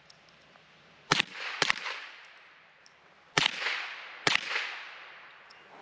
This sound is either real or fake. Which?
real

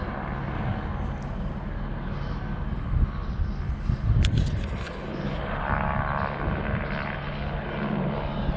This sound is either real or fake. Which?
real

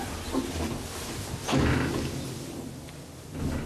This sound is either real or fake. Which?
real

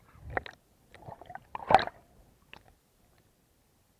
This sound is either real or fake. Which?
real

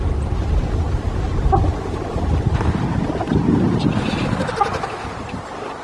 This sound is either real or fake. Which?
real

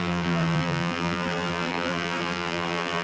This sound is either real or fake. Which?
fake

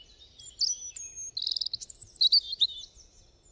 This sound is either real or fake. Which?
real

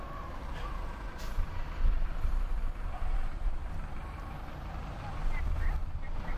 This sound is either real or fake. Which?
fake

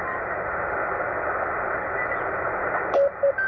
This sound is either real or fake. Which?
real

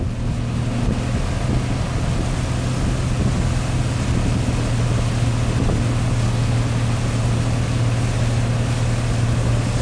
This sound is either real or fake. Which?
real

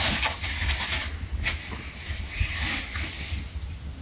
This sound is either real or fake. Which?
real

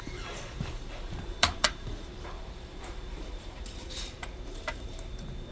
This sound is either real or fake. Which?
fake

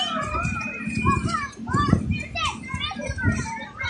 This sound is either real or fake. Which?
fake